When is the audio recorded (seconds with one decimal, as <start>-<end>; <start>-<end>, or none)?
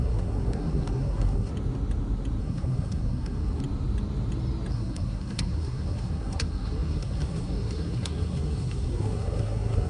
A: 1.5-2.4; 3.6-4.7